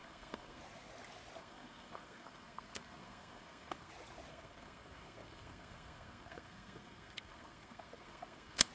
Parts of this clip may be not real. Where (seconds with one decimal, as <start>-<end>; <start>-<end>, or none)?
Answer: 0.0-0.6; 1.4-3.9; 4.3-8.7